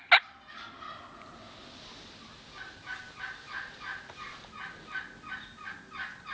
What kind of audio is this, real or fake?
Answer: real